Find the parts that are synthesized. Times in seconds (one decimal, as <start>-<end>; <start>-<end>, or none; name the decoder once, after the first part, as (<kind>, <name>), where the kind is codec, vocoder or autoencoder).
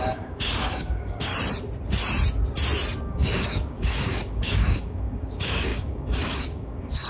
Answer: 0.0-1.3 (codec, DAC); 3.0-7.1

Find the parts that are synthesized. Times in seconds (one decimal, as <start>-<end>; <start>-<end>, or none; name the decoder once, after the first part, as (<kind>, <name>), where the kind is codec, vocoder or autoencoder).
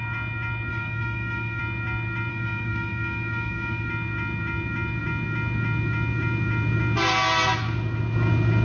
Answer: 0.7-1.6 (codec, DAC); 2.3-3.9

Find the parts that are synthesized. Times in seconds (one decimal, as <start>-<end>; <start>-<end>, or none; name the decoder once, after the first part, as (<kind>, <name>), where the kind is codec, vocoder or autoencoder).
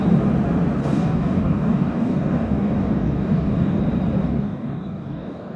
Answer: 0.8-3.8 (codec, DAC); 4.2-5.6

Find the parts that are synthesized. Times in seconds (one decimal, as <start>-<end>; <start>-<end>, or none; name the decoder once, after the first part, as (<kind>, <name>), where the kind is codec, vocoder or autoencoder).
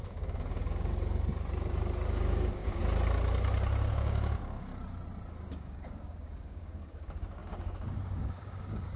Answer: 0.0-0.9 (codec, DAC); 2.1-2.8; 3.9-4.7; 5.5-9.0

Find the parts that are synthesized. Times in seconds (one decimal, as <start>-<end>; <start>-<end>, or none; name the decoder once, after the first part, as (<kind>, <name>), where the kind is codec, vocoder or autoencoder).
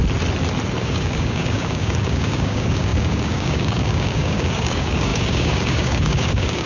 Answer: 0.8-6.7 (codec, DAC)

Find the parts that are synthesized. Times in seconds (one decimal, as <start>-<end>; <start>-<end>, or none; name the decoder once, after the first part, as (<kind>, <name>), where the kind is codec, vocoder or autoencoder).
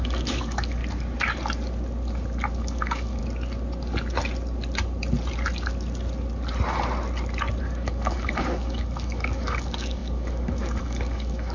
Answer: 0.0-0.8 (codec, DAC); 2.6-3.2; 7.6-11.5